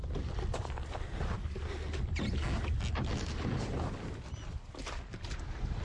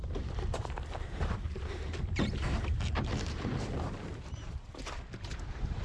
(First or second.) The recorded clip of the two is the first